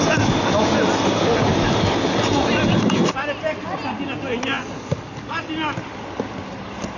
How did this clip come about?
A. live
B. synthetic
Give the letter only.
A